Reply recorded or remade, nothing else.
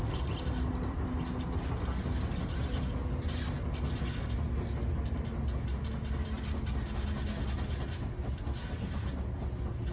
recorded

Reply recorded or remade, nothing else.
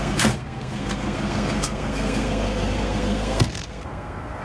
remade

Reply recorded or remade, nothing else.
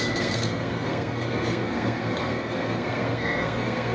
remade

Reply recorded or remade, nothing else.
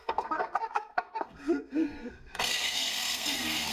remade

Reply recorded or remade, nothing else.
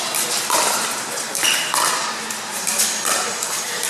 recorded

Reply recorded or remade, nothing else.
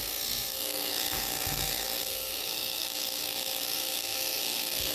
remade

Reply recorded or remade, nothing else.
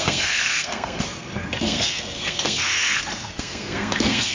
remade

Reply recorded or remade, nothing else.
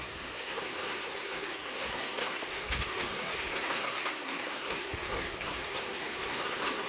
remade